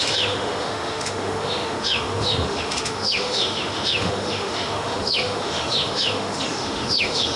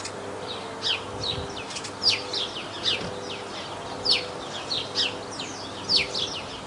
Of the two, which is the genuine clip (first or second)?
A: second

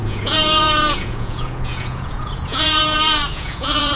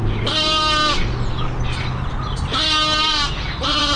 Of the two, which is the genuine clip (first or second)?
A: second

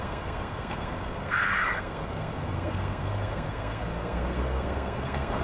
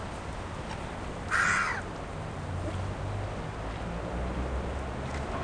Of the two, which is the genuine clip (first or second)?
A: second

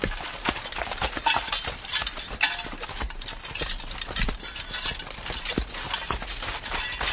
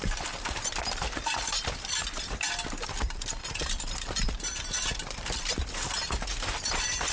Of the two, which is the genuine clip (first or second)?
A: first